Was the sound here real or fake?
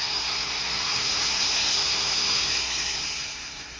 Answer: fake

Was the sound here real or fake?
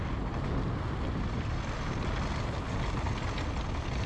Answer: real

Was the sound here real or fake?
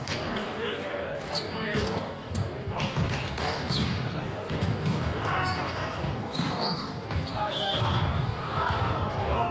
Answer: fake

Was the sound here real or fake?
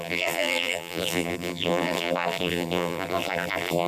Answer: fake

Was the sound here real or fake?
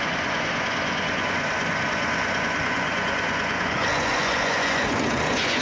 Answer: fake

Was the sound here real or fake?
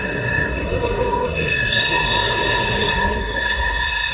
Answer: fake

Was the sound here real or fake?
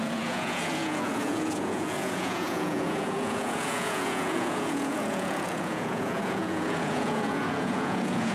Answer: fake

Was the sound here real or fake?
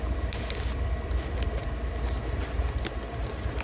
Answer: fake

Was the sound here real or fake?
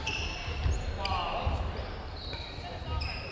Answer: fake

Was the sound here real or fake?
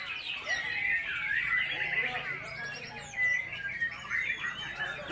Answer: fake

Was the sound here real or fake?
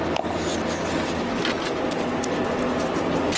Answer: real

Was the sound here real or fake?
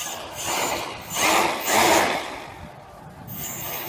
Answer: real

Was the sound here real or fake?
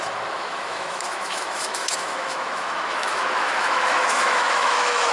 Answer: fake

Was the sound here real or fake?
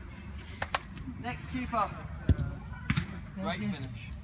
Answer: real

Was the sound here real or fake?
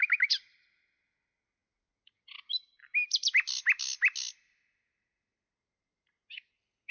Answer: real